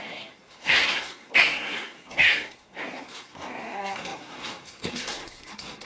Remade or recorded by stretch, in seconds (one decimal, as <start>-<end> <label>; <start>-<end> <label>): 0.0-5.8 remade